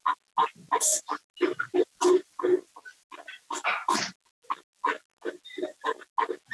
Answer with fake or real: real